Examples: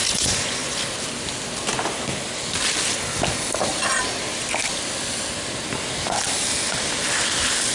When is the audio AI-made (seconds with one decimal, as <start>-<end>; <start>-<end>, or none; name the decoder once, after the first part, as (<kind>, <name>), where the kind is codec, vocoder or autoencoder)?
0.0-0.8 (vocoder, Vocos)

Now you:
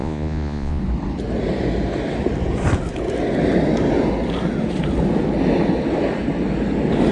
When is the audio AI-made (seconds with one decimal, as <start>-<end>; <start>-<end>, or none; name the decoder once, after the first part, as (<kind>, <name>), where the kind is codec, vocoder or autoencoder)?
0.0-0.8 (vocoder, Vocos)

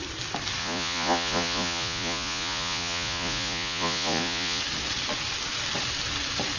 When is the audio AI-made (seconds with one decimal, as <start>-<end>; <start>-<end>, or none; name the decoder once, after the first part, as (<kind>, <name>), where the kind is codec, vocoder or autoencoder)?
0.6-4.6 (vocoder, Vocos)